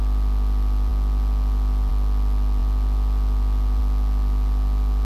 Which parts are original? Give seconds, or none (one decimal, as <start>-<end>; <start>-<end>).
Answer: 0.0-5.0